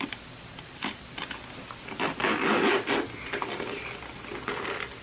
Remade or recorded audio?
recorded